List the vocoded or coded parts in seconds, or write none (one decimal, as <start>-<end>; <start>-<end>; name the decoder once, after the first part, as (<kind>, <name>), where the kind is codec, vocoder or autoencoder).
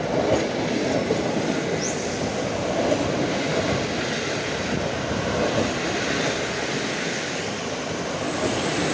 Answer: none